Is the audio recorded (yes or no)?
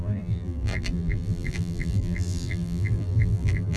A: no